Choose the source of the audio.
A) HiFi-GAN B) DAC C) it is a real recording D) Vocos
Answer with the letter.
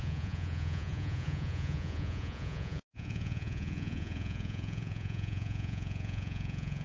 D